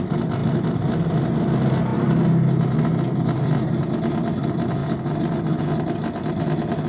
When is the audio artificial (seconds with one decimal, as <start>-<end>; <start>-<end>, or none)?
none